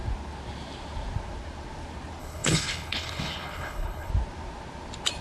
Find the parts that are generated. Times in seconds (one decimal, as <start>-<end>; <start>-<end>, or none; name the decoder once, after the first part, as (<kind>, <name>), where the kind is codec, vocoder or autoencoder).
2.2-4.1 (codec, HILCodec)

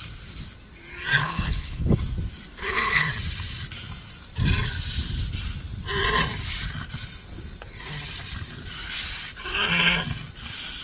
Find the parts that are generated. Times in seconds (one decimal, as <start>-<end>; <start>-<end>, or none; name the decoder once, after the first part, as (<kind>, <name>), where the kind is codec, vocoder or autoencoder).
1.2-2.0 (codec, HILCodec); 2.5-3.1

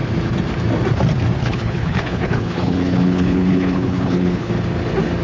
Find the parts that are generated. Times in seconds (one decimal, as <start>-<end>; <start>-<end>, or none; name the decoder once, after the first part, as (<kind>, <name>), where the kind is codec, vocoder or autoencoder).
1.4-4.5 (codec, HILCodec)

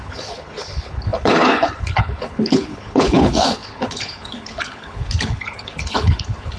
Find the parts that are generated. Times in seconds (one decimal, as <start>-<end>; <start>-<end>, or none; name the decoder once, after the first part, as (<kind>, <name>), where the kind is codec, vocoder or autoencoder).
0.0-6.6 (codec, HILCodec)

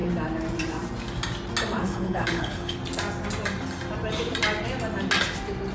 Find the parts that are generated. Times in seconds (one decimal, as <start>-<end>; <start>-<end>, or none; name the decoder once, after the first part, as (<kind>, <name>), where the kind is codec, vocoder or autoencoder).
1.8-2.8 (codec, HILCodec)

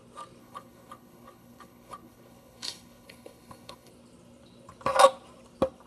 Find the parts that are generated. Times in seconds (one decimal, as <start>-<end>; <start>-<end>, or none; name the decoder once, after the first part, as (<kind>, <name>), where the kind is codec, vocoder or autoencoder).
0.4-3.9 (codec, HILCodec)

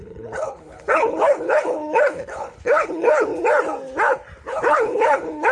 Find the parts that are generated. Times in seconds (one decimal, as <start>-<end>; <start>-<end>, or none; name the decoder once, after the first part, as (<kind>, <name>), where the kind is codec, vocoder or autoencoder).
0.0-3.3 (codec, HILCodec); 4.4-5.5